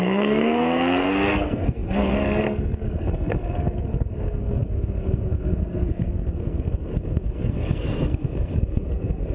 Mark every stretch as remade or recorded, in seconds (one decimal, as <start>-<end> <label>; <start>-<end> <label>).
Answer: 0.0-9.3 remade